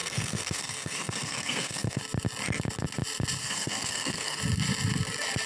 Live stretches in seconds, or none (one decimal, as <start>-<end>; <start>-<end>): 2.0-3.4; 4.4-5.5